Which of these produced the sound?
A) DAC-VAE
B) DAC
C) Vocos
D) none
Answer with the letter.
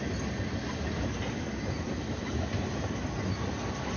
D